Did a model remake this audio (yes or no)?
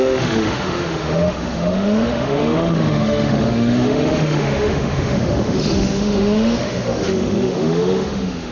yes